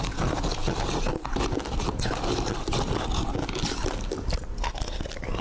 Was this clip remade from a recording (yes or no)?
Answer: no